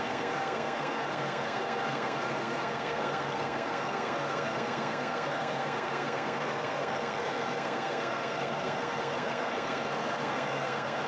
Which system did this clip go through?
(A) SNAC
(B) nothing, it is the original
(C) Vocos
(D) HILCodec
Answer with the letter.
A